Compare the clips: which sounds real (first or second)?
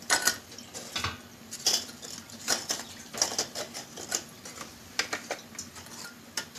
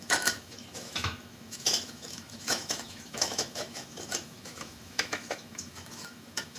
first